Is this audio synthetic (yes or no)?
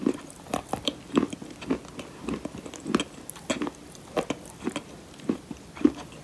no